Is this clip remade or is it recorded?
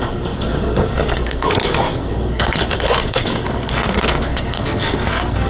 remade